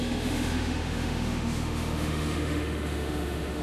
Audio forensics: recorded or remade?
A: remade